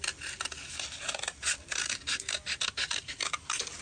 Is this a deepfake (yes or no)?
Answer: no